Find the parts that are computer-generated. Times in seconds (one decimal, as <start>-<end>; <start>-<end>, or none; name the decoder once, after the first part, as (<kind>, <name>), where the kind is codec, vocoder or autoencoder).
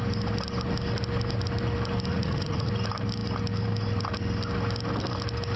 2.1-2.7 (vocoder, Vocos)